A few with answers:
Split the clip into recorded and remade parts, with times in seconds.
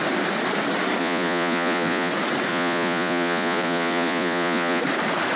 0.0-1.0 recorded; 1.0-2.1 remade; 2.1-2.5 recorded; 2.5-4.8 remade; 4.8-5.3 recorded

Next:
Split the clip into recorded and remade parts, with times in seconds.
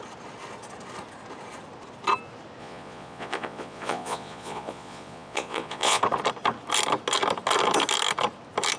0.0-2.6 recorded; 2.6-6.0 remade; 6.0-8.8 recorded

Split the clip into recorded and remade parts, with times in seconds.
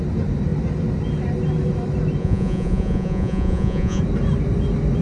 0.0-2.2 recorded; 2.2-4.0 remade; 4.0-5.0 recorded